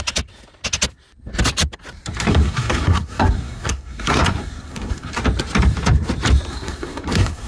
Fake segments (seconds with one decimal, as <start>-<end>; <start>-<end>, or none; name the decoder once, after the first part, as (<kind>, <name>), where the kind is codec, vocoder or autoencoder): 2.3-5.2 (codec, SNAC); 6.5-7.5

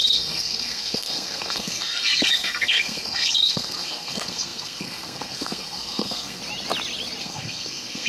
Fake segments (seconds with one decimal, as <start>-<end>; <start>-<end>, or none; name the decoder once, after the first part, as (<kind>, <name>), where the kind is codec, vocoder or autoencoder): 0.0-6.4 (codec, SNAC); 7.2-8.1

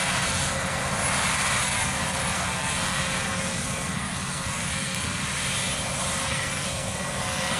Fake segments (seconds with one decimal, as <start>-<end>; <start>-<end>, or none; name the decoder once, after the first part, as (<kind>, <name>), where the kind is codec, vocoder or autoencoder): 0.0-0.8 (codec, SNAC); 1.6-5.2; 6.2-7.6

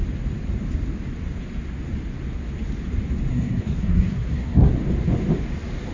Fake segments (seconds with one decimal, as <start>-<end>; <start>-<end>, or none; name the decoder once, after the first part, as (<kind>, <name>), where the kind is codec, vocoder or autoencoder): 3.3-4.7 (codec, SNAC)

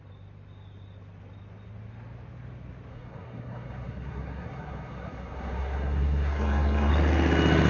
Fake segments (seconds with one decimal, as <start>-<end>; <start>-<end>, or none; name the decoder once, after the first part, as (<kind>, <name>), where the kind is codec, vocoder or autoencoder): 2.9-6.9 (codec, SNAC)